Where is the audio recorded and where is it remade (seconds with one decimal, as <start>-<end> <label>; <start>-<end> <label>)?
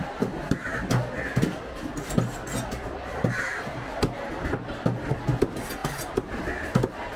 0.0-7.2 recorded